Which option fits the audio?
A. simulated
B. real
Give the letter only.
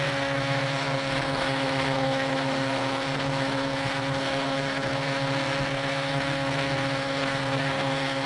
A